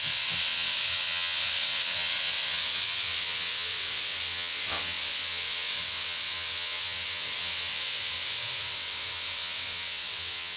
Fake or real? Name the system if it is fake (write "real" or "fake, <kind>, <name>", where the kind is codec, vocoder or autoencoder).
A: fake, vocoder, WaveNeXt